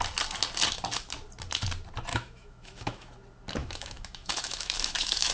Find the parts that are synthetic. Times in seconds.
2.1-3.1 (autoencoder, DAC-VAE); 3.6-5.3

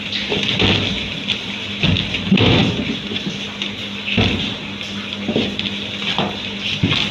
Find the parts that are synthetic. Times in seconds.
none

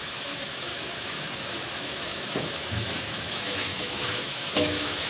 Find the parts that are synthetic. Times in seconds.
0.0-5.1 (autoencoder, DAC-VAE)

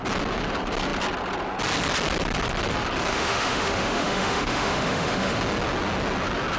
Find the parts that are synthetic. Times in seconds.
3.1-5.4 (autoencoder, DAC-VAE)

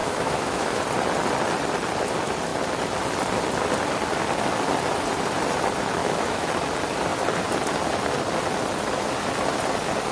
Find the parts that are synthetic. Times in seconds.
0.0-0.8 (autoencoder, DAC-VAE); 6.0-6.5